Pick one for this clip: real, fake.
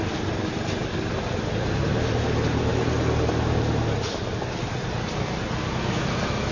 real